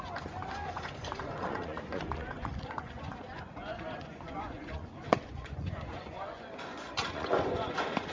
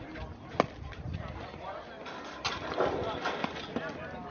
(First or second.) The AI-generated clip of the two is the first